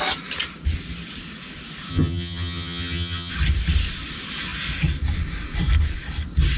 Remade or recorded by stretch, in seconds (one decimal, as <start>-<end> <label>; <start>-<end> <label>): 0.0-1.9 recorded; 1.9-3.3 remade; 3.3-6.6 recorded